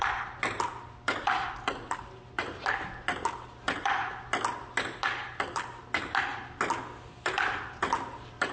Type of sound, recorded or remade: recorded